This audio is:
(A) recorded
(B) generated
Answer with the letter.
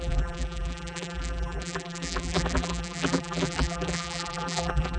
B